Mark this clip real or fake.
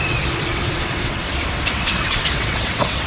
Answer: fake